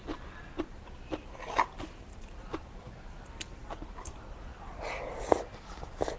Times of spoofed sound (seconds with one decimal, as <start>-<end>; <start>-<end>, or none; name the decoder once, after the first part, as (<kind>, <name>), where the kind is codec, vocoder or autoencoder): 2.1-2.9 (vocoder, BigVGAN v2)

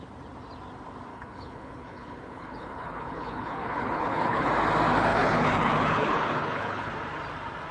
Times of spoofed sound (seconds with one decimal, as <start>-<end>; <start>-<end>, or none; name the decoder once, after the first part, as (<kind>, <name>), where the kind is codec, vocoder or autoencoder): 1.1-4.5 (codec, HILCodec); 5.1-6.9

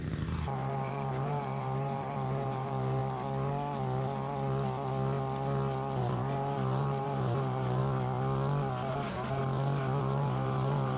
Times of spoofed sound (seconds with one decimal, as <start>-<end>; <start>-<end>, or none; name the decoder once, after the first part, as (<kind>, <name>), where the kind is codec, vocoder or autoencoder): 0.0-3.0 (vocoder, BigVGAN v2); 6.0-7.8; 8.9-9.4; 10.0-11.0

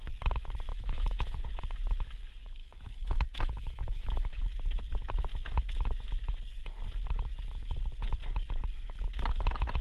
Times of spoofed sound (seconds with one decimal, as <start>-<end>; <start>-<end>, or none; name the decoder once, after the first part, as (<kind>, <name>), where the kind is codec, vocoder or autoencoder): 0.7-1.4 (autoencoder, DAC-VAE); 2.6-4.4

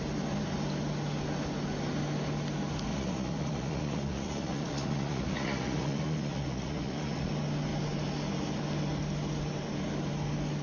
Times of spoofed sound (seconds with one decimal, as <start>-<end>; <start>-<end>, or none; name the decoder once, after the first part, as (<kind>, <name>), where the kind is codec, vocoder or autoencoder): 2.9-7.3 (vocoder, Vocos)

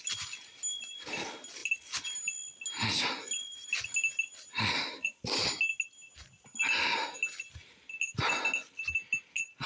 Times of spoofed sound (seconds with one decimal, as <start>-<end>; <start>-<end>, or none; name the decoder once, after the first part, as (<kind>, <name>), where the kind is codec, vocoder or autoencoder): none

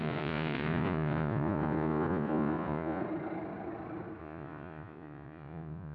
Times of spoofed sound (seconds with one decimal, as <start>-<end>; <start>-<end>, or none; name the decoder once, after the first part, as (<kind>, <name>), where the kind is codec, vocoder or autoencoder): 0.0-3.0 (vocoder, Vocos); 4.2-5.9